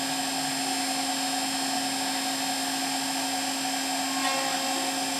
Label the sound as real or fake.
real